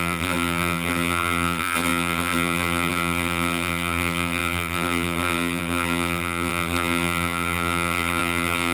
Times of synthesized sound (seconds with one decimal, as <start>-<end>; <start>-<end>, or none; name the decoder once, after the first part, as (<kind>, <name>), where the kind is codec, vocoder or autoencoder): 0.0-8.7 (vocoder, BigVGAN v2)